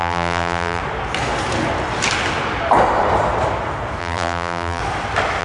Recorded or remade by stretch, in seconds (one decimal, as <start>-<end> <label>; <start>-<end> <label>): 0.0-0.8 remade; 0.8-4.0 recorded; 4.0-4.8 remade; 4.8-5.4 recorded